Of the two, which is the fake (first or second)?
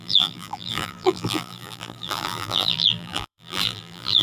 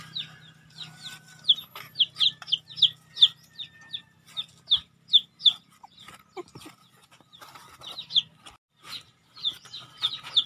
first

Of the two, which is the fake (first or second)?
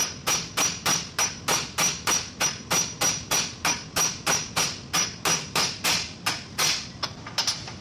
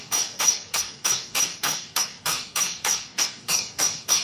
second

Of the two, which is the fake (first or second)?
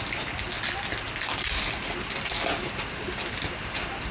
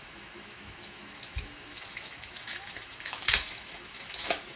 second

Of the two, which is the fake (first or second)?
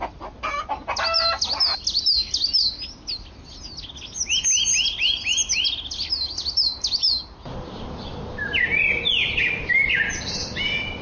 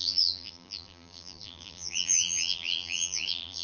second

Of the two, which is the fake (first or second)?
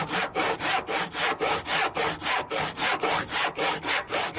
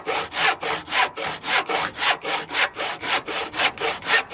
first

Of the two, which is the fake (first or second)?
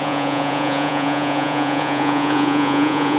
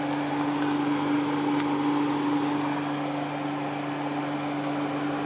first